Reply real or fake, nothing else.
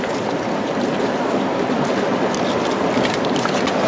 real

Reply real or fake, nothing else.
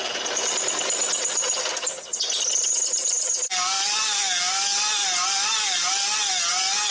real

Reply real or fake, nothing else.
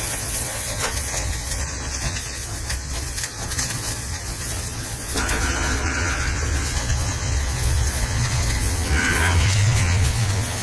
fake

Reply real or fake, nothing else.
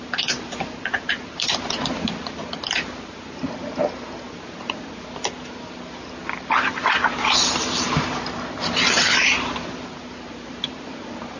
real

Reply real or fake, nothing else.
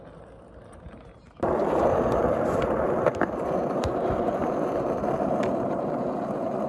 fake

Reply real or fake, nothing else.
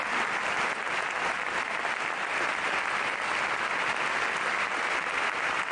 real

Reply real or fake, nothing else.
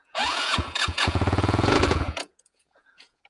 fake